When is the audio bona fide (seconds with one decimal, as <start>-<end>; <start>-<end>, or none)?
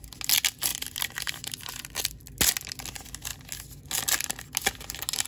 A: 0.0-0.7; 2.3-5.3